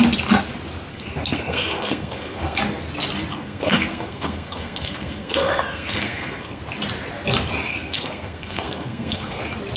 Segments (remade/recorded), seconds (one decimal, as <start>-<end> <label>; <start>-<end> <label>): 0.0-0.9 recorded; 0.9-2.6 remade; 2.6-3.3 recorded; 3.3-6.6 remade; 6.6-7.7 recorded; 7.7-9.4 remade; 9.4-9.8 recorded